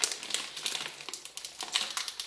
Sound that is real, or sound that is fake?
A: real